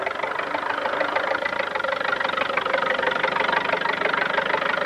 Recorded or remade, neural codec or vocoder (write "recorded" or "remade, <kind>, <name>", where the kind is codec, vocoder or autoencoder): recorded